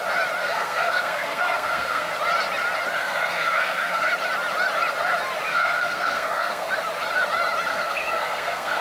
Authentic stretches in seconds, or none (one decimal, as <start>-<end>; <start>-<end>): 0.0-0.4; 2.1-3.0; 4.1-5.5; 6.7-7.7